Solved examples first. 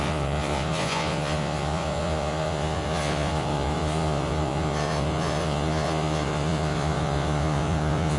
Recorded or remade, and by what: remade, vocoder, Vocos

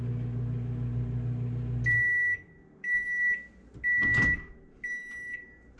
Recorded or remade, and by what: recorded